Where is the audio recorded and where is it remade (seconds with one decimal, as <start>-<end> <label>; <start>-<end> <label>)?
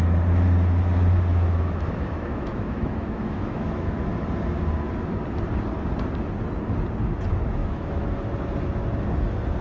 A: 0.0-1.3 recorded; 1.3-4.0 remade; 4.0-7.6 recorded; 7.6-8.3 remade; 8.3-9.6 recorded